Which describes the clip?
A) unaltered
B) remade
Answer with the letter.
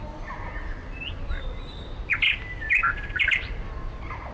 A